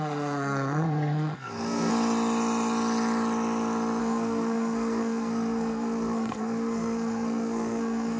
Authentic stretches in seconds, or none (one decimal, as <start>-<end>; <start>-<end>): 1.9-4.0